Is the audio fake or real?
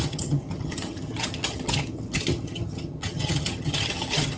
fake